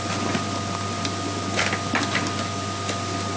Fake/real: real